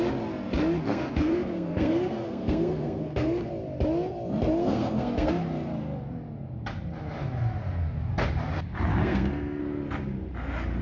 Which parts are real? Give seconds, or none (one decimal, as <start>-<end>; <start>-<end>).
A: 0.0-0.8; 3.5-4.6; 5.3-9.0; 9.6-10.8